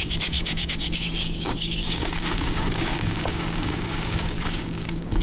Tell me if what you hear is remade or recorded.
remade